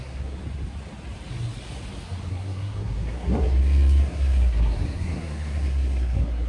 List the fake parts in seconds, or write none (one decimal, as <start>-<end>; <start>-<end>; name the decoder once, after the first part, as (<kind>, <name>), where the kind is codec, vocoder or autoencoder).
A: 0.0-0.4 (codec, SNAC); 2.3-6.5